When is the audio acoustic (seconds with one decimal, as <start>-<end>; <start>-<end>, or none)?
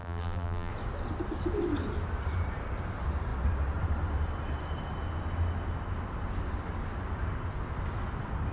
0.7-8.5